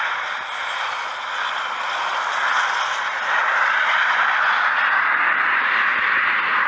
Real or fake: real